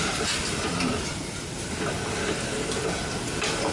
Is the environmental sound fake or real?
real